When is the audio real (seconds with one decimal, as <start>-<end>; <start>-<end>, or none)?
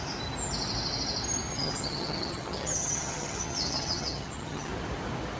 0.0-1.5; 4.7-5.4